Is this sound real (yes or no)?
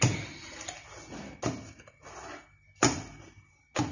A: yes